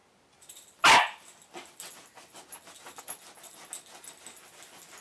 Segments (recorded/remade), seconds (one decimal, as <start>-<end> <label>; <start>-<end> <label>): 0.0-5.0 recorded